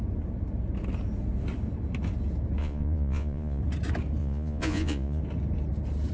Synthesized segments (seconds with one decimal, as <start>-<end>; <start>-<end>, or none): 2.6-3.6; 4.2-5.2